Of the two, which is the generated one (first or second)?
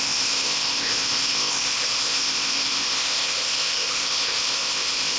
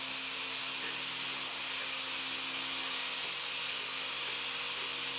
first